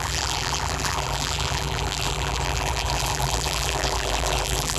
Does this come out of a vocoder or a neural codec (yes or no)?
yes